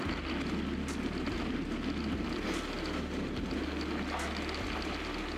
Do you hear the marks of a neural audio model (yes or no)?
no